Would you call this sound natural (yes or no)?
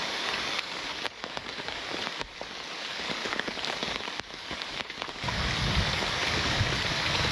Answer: no